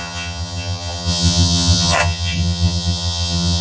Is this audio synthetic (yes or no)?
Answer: yes